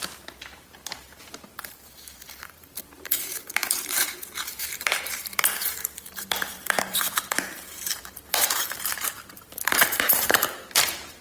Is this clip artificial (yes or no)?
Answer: yes